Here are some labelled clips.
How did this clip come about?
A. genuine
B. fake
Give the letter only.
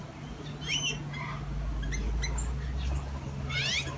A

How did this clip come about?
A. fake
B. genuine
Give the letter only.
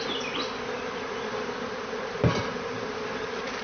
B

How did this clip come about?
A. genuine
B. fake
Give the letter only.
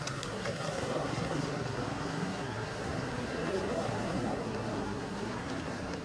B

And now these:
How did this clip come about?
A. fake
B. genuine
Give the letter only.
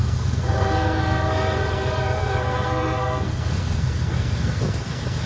A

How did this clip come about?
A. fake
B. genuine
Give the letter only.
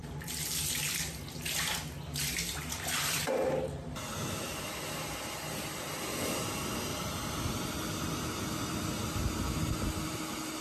B